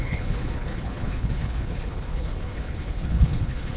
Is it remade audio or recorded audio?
remade